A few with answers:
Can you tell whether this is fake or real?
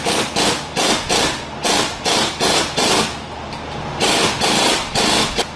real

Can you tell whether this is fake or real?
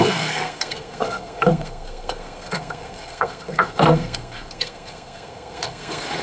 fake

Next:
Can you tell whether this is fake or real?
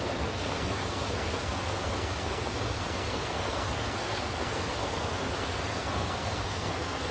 fake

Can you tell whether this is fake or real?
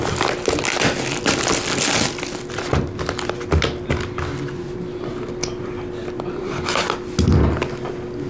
real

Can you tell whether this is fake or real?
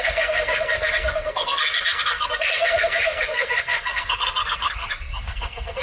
fake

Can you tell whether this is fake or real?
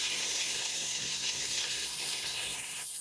fake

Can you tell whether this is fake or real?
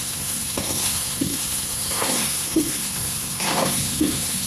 fake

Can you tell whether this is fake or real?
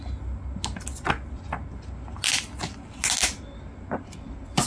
real